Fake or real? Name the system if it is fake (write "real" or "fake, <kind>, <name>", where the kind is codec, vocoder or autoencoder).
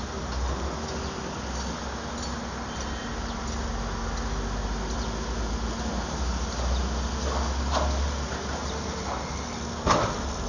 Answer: real